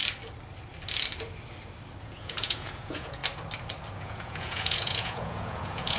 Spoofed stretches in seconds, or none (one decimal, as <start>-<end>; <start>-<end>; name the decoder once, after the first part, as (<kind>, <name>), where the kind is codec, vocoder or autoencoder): 2.0-3.2 (vocoder, Vocos); 3.9-6.0